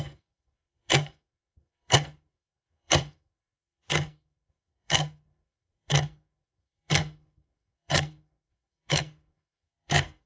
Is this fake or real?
fake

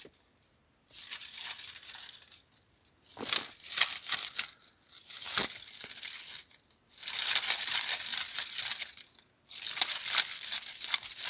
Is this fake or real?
real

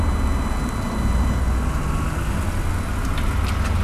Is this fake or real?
real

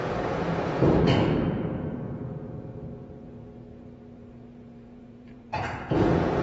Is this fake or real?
fake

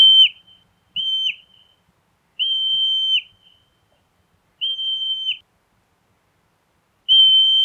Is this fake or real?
real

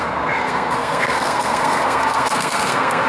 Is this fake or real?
fake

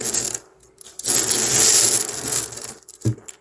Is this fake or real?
real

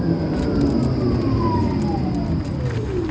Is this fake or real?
real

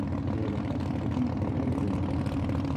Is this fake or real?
real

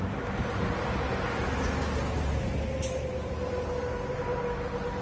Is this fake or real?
real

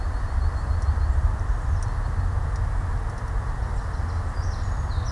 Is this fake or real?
real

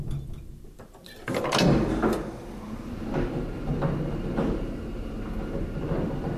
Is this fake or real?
real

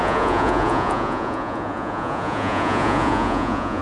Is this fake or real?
fake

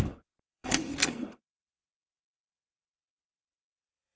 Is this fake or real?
fake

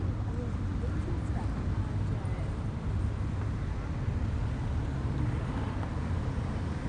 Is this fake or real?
real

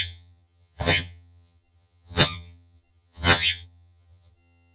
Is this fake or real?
fake